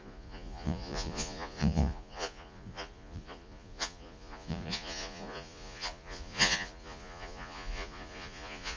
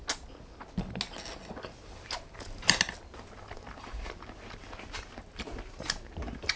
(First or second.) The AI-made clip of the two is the first